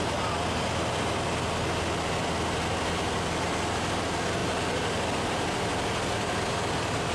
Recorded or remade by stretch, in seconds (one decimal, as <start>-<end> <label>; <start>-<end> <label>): 0.0-7.1 recorded